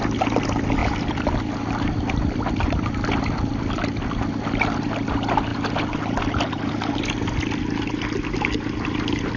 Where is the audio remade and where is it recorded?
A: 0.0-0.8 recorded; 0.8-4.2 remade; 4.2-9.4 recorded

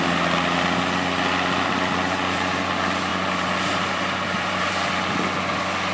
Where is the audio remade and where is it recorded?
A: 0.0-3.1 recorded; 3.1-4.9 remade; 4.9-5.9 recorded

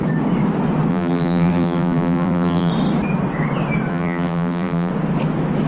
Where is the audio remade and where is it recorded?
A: 0.0-0.9 recorded; 0.9-2.7 remade; 2.7-3.9 recorded; 3.9-4.9 remade; 4.9-5.7 recorded

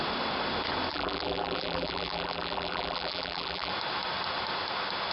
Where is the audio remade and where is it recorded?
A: 0.0-0.9 recorded; 0.9-3.7 remade; 3.7-5.1 recorded